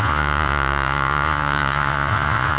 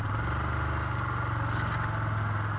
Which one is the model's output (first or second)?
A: first